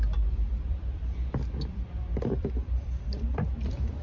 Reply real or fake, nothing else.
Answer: fake